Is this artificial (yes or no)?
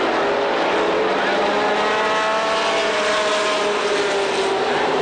no